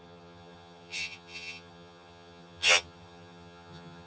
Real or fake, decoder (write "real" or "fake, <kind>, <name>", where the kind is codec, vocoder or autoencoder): fake, vocoder, HiFi-GAN